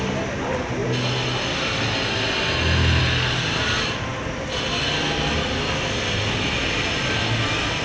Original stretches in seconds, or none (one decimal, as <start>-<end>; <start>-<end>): 0.0-7.8